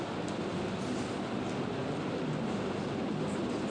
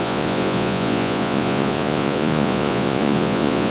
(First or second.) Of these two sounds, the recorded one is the first